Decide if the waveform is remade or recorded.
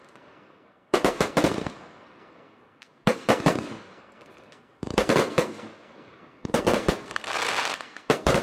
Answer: remade